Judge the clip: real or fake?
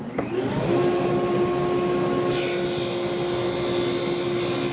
real